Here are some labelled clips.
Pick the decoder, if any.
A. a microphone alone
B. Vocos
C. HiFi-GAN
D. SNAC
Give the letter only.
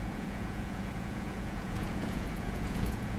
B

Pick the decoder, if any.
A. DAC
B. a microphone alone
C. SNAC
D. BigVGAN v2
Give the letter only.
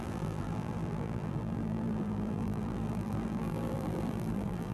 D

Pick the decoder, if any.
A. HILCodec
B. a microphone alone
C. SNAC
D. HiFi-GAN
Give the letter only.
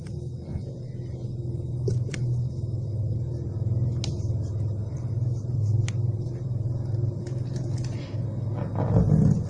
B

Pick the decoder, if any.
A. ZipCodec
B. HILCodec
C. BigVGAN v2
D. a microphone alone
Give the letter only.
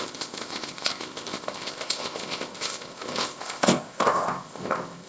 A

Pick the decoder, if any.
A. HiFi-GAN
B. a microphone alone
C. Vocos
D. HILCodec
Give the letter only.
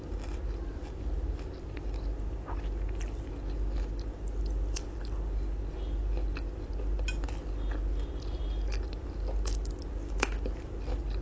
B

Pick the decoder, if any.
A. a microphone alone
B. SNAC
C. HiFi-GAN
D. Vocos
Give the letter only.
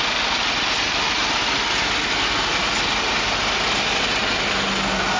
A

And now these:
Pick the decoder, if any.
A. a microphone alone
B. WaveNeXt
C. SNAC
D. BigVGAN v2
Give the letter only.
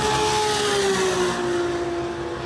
A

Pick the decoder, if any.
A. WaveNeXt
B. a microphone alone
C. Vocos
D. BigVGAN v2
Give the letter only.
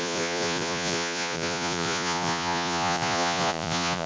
C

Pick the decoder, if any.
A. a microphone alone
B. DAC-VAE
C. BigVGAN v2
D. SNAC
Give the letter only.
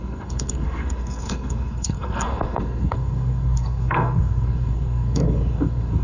D